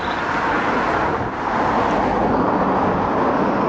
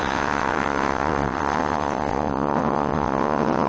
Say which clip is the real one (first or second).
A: first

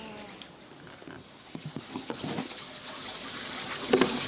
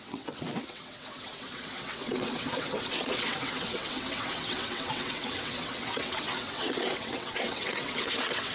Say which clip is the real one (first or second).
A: first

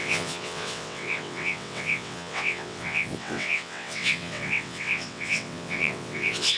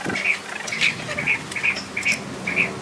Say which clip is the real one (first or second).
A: second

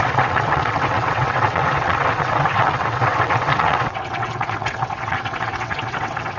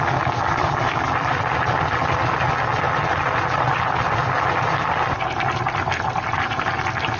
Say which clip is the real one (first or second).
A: second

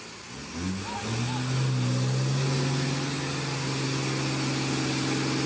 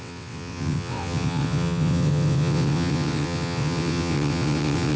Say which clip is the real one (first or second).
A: first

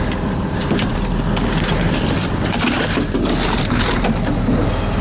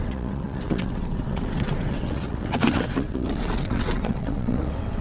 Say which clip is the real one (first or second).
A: first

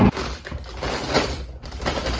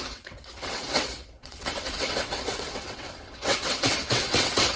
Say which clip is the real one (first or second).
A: first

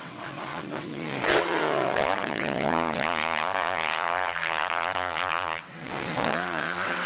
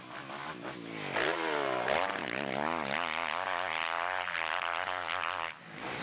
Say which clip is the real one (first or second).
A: second